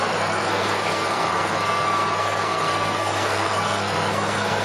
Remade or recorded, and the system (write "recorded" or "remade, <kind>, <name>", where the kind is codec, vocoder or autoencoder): remade, codec, SNAC